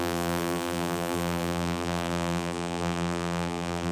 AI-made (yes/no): yes